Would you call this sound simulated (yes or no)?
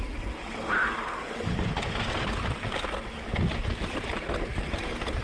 no